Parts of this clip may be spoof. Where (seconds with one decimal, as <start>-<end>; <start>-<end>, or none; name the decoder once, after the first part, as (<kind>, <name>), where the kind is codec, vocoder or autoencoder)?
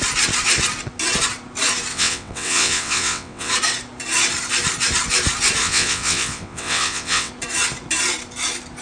1.9-3.5 (vocoder, WaveNeXt); 5.6-7.3